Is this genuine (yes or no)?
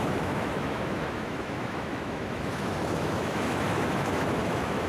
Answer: no